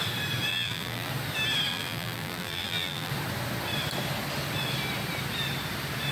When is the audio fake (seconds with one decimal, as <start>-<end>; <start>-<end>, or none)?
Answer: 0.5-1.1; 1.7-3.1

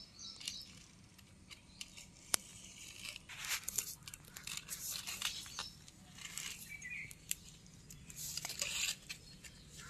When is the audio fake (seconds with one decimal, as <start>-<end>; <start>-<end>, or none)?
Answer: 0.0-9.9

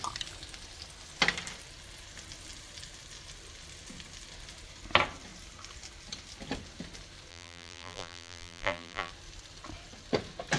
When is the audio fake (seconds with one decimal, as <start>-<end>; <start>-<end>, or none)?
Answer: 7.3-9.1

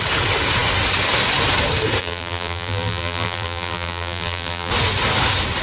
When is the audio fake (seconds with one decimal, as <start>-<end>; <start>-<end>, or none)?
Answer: 2.0-4.7